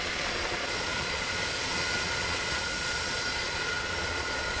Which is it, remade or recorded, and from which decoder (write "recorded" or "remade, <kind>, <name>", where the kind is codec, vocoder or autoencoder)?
remade, vocoder, Vocos